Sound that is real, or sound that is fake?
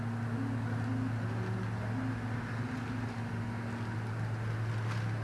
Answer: real